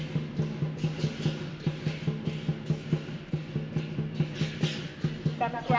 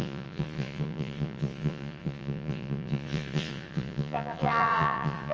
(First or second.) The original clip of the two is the first